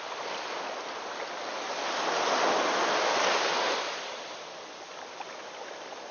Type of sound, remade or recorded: recorded